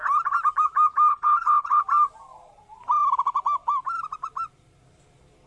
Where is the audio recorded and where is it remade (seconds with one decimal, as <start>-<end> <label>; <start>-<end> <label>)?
0.0-1.1 recorded; 1.1-1.8 remade; 1.8-5.5 recorded